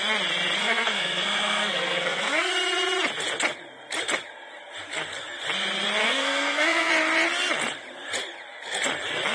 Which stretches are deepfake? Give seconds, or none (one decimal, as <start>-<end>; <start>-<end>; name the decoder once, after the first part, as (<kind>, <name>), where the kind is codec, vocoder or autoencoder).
0.6-2.5 (codec, SNAC); 6.0-6.9

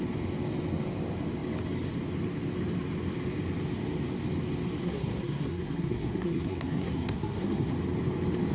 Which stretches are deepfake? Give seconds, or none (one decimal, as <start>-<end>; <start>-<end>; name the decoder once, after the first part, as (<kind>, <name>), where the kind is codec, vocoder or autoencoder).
4.8-7.7 (codec, SNAC)

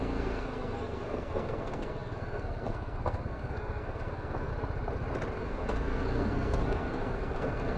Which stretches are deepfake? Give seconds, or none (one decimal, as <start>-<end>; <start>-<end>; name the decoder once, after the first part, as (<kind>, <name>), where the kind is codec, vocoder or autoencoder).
0.0-4.5 (codec, SNAC); 5.4-7.8

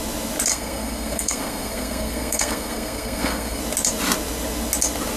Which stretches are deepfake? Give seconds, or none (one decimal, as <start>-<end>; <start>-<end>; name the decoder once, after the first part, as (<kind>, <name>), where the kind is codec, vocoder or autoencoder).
0.5-3.6 (codec, SNAC)

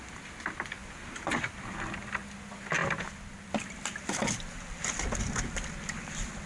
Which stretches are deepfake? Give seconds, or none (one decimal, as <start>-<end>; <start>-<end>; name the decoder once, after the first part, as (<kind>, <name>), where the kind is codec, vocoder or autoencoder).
none

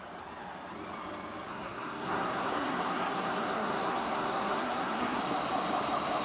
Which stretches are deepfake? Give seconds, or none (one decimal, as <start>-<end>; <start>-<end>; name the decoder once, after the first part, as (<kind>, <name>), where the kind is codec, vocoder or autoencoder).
1.5-5.2 (codec, SNAC)

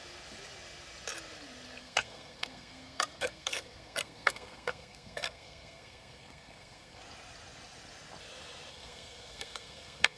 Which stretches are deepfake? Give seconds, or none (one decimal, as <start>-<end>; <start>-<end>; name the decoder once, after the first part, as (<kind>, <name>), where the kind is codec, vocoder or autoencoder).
1.8-7.0 (codec, SNAC); 8.7-10.2

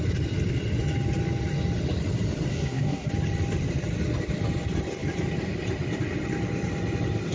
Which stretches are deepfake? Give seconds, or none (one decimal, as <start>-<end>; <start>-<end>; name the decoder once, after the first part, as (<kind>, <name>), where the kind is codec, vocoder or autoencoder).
2.5-3.1 (codec, SNAC)